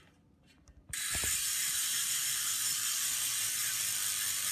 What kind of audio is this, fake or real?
fake